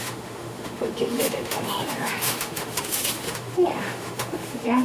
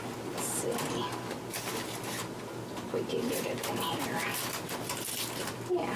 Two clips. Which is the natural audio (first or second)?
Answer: second